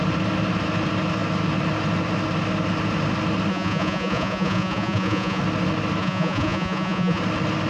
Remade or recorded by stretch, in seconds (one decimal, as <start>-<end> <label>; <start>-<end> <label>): 0.0-3.5 recorded; 3.5-5.4 remade; 5.4-6.0 recorded; 6.0-7.2 remade; 7.2-7.7 recorded